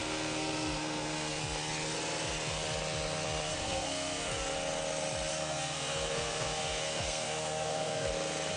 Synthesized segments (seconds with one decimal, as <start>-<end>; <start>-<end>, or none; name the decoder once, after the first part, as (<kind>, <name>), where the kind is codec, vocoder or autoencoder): 0.0-1.4 (codec, SNAC); 3.5-4.3; 5.3-8.1